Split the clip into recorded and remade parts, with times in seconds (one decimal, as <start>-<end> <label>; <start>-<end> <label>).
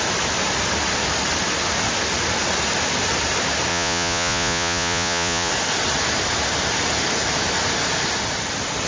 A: 0.0-3.7 recorded; 3.7-5.5 remade; 5.5-8.9 recorded